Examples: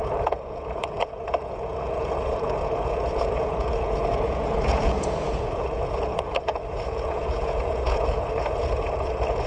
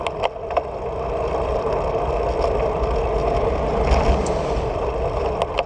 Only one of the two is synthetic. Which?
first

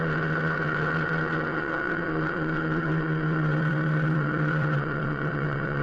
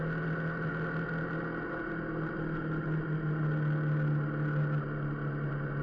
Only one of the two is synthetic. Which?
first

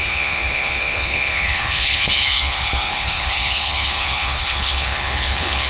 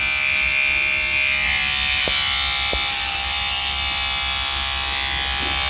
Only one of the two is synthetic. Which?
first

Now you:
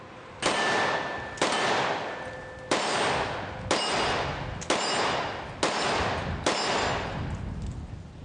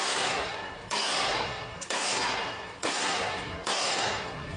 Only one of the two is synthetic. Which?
second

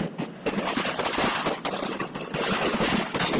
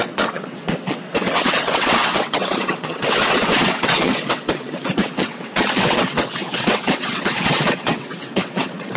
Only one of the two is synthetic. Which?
second